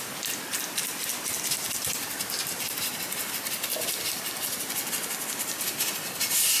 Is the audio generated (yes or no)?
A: no